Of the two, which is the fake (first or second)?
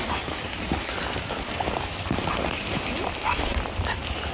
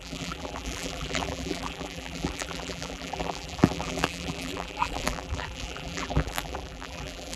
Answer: second